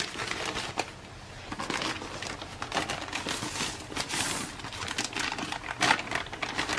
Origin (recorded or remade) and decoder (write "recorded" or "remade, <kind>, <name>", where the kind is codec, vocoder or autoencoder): recorded